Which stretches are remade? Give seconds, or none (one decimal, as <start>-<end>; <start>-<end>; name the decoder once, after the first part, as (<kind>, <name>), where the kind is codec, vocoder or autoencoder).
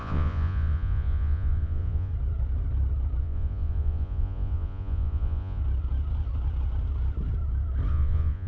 0.0-2.1 (vocoder, Vocos); 3.2-5.6; 7.9-8.5